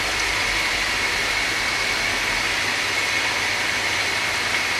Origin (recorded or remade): recorded